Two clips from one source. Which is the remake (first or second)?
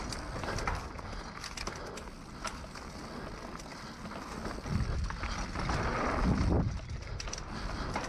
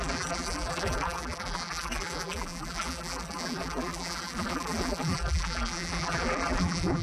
second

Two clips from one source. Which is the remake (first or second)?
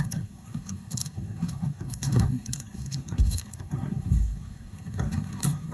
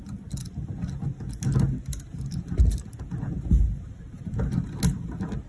first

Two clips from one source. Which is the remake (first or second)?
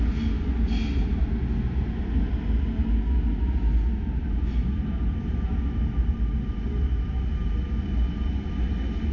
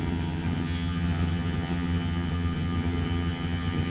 second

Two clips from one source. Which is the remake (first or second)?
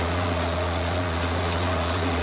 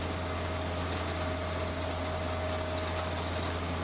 first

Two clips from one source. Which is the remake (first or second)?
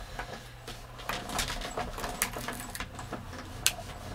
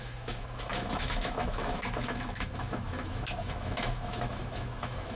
second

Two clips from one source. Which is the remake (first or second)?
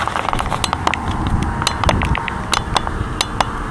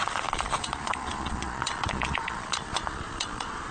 second